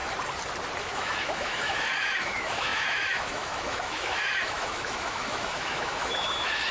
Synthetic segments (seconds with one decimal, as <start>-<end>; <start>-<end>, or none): 0.8-6.7